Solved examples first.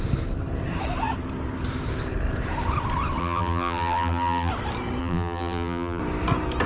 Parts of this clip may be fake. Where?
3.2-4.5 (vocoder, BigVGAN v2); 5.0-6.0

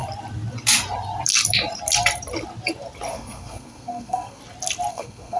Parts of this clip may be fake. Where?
3.1-4.4 (codec, SNAC); 4.9-5.4

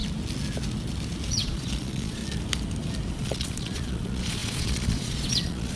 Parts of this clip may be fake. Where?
1.3-2.2 (vocoder, Vocos); 3.1-5.8

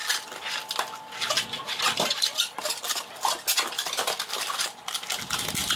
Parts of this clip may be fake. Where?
none

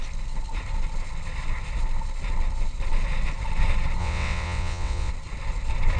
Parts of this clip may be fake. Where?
4.0-5.1 (vocoder, WaveNeXt)

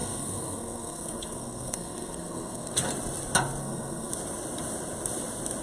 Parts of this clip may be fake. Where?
0.0-2.7 (codec, SNAC); 3.6-4.1

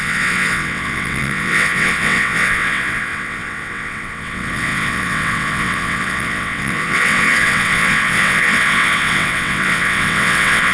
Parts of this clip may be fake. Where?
0.0-10.7 (vocoder, WaveNeXt)